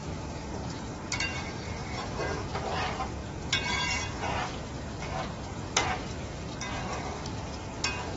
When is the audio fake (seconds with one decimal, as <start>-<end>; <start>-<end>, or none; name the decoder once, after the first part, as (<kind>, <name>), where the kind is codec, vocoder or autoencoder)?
none